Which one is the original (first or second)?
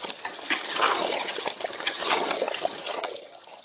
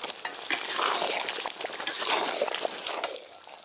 second